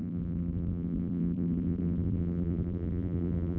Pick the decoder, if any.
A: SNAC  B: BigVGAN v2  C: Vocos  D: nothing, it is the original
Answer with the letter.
B